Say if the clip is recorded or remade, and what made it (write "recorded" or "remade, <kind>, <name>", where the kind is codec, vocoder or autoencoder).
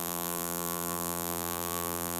remade, vocoder, BigVGAN v2